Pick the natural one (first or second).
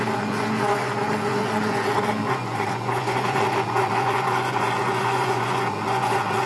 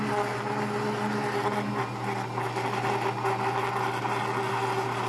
second